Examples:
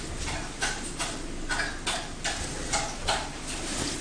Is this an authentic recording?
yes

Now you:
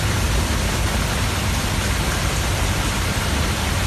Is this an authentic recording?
yes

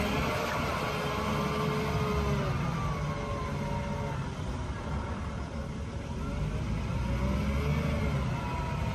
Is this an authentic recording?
yes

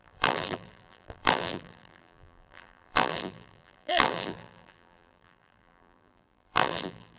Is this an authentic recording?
no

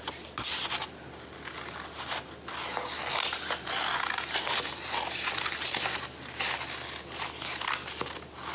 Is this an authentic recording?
yes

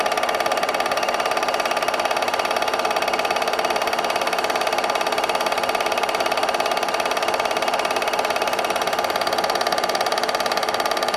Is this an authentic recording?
no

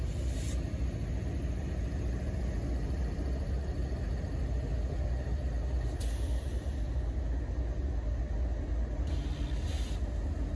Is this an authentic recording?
yes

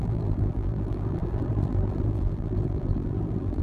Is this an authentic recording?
no